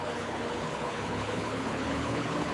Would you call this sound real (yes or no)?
no